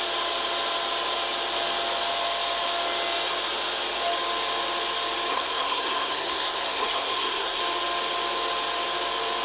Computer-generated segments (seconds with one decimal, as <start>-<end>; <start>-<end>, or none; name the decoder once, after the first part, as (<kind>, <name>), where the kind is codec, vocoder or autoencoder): 5.3-7.6 (codec, SNAC)